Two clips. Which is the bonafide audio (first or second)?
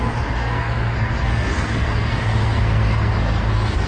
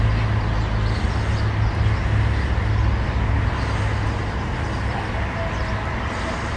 second